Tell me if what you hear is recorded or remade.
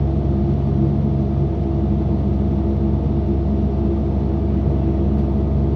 recorded